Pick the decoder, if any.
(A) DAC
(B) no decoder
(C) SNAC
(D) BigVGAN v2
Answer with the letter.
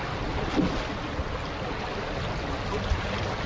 B